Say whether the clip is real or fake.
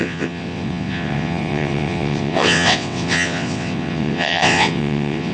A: fake